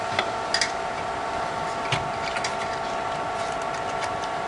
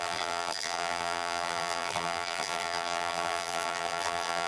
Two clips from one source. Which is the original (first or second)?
first